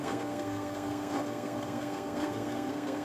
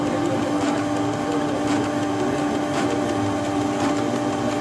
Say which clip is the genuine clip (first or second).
second